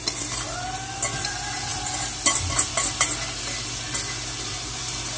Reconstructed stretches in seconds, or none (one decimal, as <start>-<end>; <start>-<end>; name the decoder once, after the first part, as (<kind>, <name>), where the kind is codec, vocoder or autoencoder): none